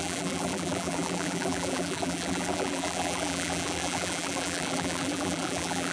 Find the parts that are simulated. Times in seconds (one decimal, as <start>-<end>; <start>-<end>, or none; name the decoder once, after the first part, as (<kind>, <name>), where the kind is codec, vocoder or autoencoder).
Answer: 0.0-5.9 (vocoder, BigVGAN v2)